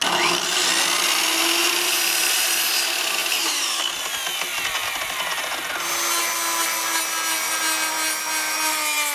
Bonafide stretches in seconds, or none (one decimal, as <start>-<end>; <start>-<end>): 0.0-1.6; 2.7-3.2; 3.8-9.1